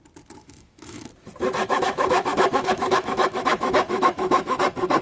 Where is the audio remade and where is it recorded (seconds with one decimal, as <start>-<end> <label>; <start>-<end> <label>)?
0.0-0.4 recorded; 0.4-1.1 remade; 1.1-1.6 recorded; 1.6-4.6 remade; 4.6-5.0 recorded